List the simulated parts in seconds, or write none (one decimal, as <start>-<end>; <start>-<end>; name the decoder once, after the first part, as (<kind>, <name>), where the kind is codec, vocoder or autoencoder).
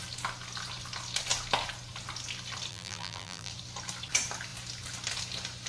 2.7-3.5 (vocoder, BigVGAN v2)